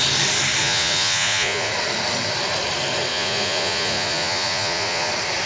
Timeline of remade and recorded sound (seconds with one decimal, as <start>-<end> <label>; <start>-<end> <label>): 0.0-0.6 recorded; 0.6-1.7 remade; 1.7-3.1 recorded; 3.1-5.1 remade; 5.1-5.5 recorded